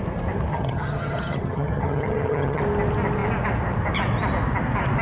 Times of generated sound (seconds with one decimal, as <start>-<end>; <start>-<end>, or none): 0.5-2.6